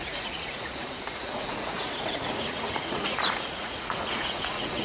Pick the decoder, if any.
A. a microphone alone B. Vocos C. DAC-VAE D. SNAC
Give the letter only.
B